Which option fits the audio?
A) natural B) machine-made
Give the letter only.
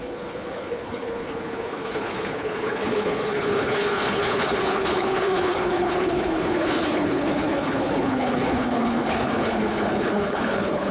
B